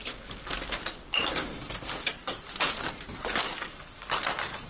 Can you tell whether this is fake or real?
real